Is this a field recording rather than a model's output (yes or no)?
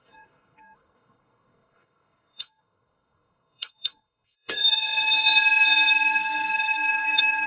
no